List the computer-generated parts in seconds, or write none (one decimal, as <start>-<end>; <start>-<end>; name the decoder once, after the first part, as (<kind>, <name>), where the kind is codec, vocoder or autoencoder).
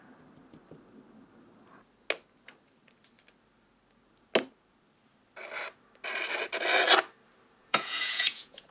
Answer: 7.6-8.7 (vocoder, Vocos)